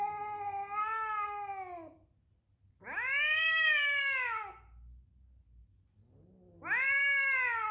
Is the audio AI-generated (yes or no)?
no